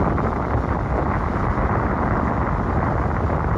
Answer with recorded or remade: recorded